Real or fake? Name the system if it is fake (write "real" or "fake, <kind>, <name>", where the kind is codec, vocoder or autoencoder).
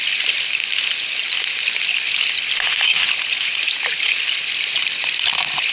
real